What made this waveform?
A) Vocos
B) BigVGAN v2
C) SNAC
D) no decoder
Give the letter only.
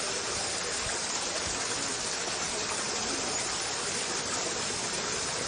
B